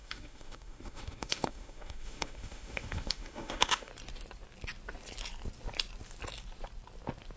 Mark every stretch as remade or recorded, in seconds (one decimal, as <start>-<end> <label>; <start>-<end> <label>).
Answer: 0.0-3.9 remade; 3.9-7.4 recorded